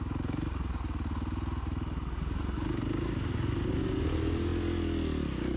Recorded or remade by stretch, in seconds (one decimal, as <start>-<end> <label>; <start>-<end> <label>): 0.0-5.6 recorded